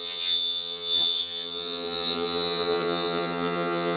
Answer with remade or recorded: remade